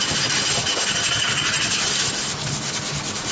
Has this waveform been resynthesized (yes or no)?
no